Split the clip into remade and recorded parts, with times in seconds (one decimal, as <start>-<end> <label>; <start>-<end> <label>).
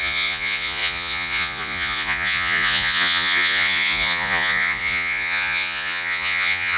0.0-6.8 remade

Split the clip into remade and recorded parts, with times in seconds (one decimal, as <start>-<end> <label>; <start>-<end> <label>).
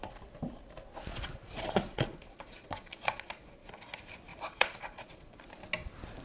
0.0-1.1 recorded; 1.1-3.3 remade; 3.3-4.3 recorded; 4.3-5.4 remade; 5.4-6.2 recorded